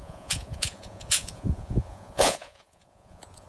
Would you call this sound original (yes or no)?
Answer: no